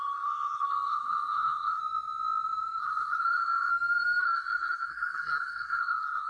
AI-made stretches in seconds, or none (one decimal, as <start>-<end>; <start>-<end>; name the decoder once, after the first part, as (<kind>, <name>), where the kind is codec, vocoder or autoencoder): 0.0-1.8 (codec, SNAC); 2.8-3.7; 4.2-6.3

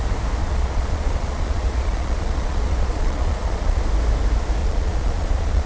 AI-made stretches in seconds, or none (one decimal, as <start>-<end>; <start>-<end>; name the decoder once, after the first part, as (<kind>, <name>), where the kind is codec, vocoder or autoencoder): 0.4-3.8 (vocoder, Vocos); 4.6-5.7

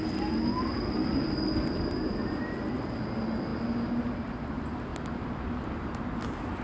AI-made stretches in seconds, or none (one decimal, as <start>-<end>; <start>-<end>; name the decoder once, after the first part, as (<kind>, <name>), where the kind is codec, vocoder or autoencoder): none